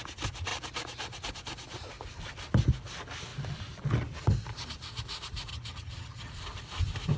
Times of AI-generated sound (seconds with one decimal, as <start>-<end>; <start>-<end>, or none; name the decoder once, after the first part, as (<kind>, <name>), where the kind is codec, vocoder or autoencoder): 5.5-6.3 (vocoder, HiFi-GAN)